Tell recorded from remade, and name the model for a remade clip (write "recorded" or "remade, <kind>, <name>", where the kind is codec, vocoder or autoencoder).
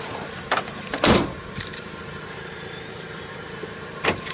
remade, vocoder, BigVGAN v2